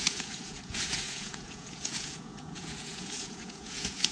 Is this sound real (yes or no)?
no